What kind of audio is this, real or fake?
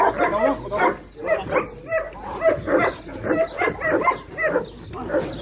real